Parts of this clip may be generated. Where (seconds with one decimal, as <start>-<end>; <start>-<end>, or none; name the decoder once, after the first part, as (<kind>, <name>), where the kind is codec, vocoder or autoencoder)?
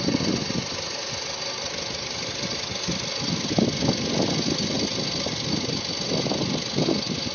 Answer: none